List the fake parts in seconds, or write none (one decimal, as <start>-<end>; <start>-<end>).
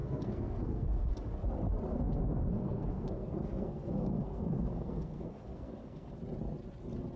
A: 0.0-1.1; 1.9-6.2